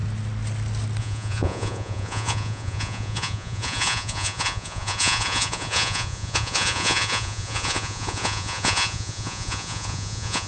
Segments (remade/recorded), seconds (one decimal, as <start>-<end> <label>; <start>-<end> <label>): 0.0-1.0 recorded; 1.0-10.5 remade